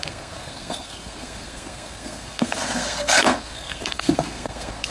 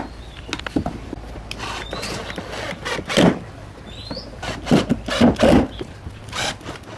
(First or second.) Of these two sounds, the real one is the second